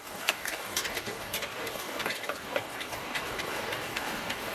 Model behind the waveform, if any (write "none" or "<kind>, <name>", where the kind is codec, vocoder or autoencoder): codec, DAC